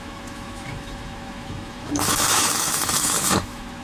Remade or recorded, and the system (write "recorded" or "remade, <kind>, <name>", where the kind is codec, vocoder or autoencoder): remade, autoencoder, DAC-VAE